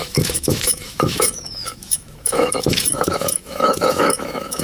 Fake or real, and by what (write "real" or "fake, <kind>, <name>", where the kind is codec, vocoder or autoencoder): fake, autoencoder, DAC-VAE